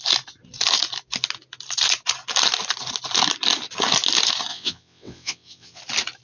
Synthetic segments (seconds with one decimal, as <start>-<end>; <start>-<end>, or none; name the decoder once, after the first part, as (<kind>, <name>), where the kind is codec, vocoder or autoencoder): 4.5-5.8 (vocoder, WaveNeXt)